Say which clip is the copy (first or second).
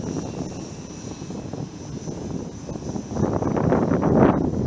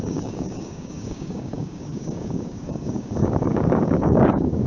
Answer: second